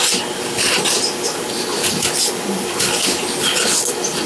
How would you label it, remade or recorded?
recorded